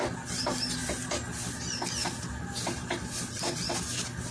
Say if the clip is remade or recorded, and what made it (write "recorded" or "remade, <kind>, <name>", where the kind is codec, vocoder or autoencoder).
recorded